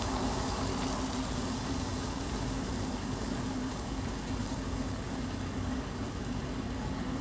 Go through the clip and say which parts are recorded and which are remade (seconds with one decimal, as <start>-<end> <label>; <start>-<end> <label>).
0.0-0.7 remade; 0.7-1.3 recorded; 1.3-7.2 remade